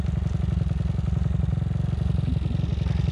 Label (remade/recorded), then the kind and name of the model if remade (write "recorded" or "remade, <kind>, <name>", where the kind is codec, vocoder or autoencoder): recorded